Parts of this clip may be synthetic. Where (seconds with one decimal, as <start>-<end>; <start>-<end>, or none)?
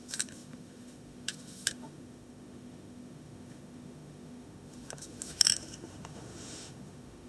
0.0-7.3